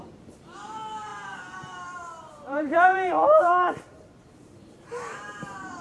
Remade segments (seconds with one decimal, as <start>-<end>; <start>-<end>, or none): 0.0-1.1; 2.3-5.8